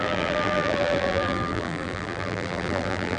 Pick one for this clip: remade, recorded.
remade